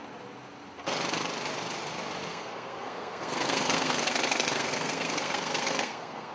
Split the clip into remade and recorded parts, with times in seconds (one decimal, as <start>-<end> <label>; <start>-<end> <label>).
0.0-2.3 recorded; 2.3-6.3 remade